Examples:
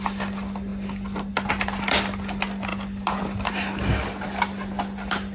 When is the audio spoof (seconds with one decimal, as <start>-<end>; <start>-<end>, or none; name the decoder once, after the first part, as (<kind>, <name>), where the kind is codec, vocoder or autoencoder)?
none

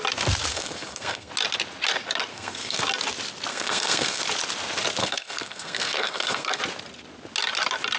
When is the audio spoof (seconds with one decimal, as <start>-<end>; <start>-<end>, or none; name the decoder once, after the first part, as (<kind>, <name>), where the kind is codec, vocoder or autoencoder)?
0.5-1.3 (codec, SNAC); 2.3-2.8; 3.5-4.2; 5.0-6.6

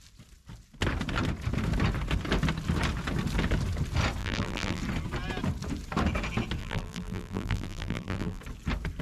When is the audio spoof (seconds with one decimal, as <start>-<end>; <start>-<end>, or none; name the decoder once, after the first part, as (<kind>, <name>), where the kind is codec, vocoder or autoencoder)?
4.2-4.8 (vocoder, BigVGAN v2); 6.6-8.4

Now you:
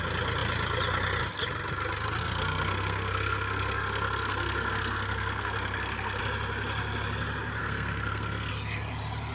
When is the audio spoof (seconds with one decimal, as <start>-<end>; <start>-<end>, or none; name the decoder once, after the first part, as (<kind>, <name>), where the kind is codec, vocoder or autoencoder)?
2.2-6.2 (codec, SNAC); 7.6-8.5

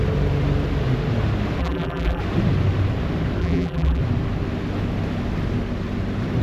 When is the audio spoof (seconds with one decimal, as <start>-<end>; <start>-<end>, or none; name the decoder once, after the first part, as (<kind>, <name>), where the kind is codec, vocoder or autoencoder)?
1.6-2.2 (vocoder, BigVGAN v2); 3.4-4.0